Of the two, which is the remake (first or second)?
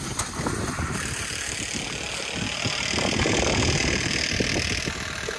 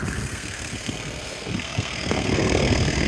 second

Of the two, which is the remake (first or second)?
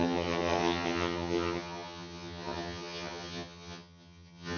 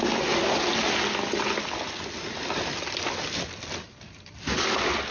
first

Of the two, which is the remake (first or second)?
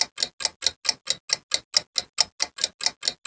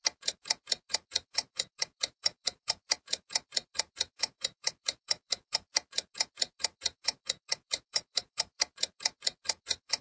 second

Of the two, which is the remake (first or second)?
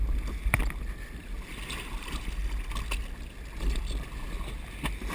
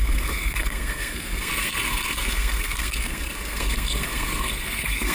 second